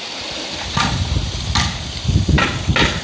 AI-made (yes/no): no